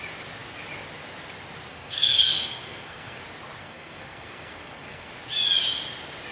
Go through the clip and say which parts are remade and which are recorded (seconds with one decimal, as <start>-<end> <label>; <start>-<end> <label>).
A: 0.0-1.7 recorded; 1.7-3.2 remade; 3.2-3.6 recorded; 3.6-5.1 remade; 5.1-6.3 recorded

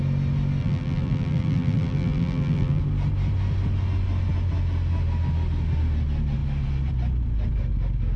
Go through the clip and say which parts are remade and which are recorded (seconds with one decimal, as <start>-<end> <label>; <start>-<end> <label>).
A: 0.0-0.6 recorded; 0.6-2.8 remade; 2.8-8.2 recorded

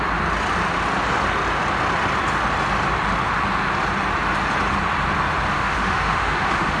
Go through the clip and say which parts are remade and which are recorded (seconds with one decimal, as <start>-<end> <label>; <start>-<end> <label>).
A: 0.0-5.5 recorded; 5.5-6.8 remade

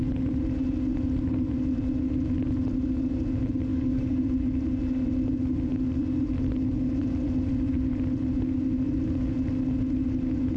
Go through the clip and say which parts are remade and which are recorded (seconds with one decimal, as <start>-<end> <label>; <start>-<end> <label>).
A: 0.0-3.7 recorded; 3.7-4.2 remade; 4.2-10.6 recorded

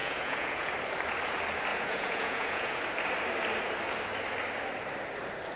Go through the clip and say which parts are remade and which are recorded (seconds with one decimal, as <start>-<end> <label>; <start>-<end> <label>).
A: 0.0-0.7 remade; 0.7-1.7 recorded; 1.7-2.8 remade; 2.8-5.5 recorded

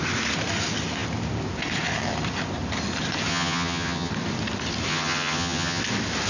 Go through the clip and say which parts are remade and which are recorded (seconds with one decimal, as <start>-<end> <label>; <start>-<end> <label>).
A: 0.0-3.3 recorded; 3.3-4.1 remade; 4.1-4.9 recorded; 4.9-5.8 remade; 5.8-6.3 recorded